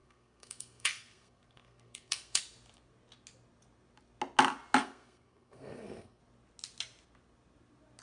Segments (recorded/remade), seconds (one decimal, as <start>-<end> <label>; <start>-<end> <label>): 0.0-2.4 remade; 2.4-4.8 recorded; 4.8-6.2 remade; 6.2-8.0 recorded